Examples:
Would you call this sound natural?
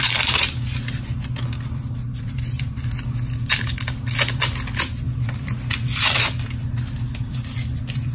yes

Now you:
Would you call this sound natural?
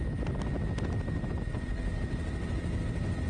yes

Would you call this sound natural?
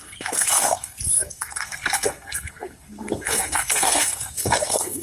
no